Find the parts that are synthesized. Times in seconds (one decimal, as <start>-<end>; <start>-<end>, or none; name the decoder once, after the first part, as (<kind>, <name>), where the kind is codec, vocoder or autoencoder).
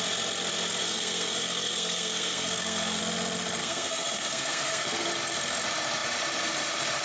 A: 0.8-3.0 (codec, SNAC); 3.6-5.1